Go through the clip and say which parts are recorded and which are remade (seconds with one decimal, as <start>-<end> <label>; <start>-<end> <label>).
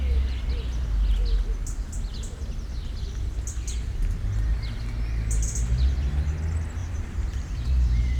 0.0-6.8 recorded; 6.8-8.2 remade